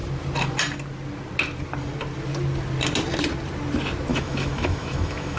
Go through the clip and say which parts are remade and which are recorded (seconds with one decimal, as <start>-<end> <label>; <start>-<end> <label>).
0.0-4.1 recorded; 4.1-5.4 remade